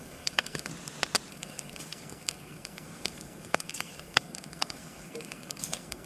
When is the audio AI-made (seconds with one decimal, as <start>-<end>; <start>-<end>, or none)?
0.0-0.7; 1.3-6.1